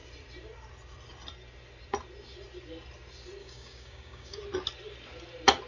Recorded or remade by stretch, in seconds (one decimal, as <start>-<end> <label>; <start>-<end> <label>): 0.0-3.4 recorded; 3.4-4.4 remade; 4.4-5.7 recorded